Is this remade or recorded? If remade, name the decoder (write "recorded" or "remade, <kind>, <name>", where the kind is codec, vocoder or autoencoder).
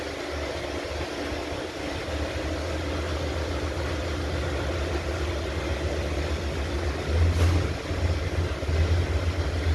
recorded